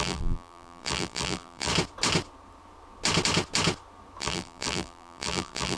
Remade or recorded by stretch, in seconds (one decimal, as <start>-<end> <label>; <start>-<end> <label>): 0.0-1.7 remade; 1.7-4.2 recorded; 4.2-5.8 remade